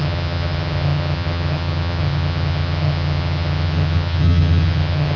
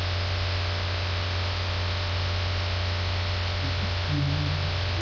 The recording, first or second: second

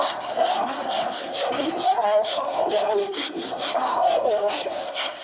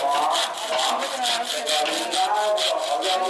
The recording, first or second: second